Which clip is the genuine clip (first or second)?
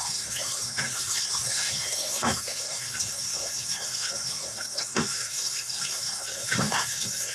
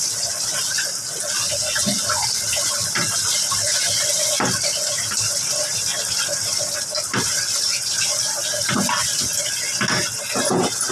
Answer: second